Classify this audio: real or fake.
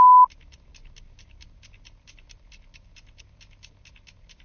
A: real